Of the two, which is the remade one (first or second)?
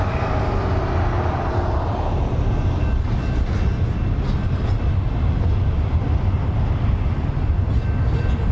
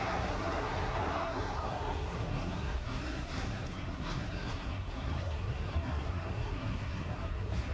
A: second